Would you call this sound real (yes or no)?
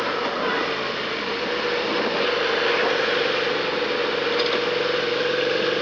yes